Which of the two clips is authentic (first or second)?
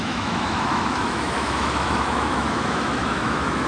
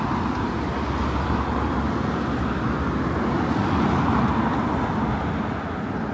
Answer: second